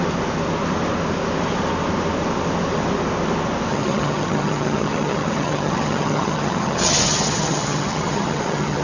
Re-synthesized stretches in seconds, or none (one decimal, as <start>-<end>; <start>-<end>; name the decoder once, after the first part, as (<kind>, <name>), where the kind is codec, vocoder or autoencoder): 3.7-8.8 (vocoder, HiFi-GAN)